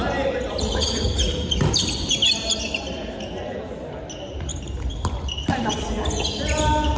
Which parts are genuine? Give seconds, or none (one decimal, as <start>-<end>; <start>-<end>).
0.0-7.0